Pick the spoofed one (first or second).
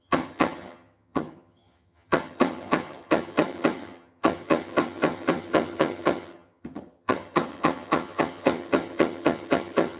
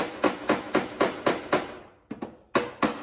first